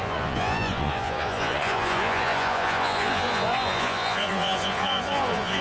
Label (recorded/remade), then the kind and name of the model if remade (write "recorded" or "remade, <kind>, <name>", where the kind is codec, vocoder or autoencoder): remade, vocoder, Vocos